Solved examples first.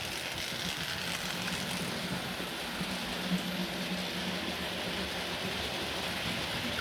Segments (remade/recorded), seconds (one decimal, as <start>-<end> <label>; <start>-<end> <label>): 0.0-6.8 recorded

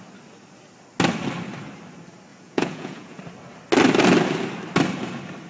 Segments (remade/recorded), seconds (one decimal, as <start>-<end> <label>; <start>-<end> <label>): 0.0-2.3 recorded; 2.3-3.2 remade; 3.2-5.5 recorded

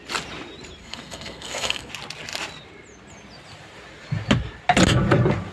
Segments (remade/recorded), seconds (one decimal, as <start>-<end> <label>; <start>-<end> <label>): 0.0-0.8 recorded; 0.8-1.9 remade; 1.9-5.5 recorded

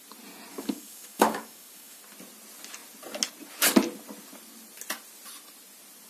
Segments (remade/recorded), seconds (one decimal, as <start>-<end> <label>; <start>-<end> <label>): 0.0-0.5 recorded; 0.5-2.0 remade; 2.0-6.1 recorded